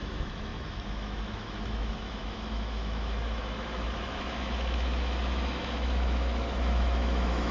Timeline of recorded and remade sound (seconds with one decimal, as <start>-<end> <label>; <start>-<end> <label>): 0.0-7.5 remade